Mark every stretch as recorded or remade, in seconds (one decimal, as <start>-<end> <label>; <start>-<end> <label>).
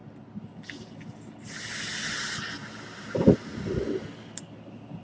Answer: 0.0-5.0 recorded